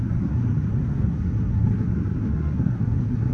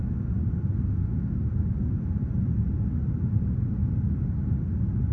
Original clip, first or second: second